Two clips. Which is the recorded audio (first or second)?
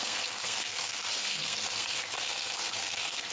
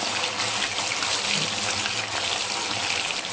second